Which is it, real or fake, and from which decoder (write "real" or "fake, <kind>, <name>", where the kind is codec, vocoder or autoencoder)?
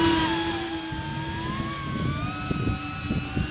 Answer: real